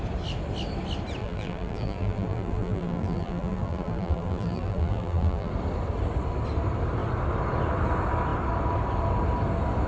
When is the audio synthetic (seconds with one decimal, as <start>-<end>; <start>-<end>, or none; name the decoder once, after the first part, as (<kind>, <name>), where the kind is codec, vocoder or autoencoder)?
1.2-5.5 (vocoder, BigVGAN v2)